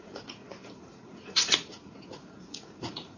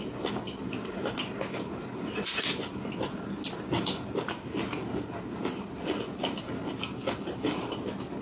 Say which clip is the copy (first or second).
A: first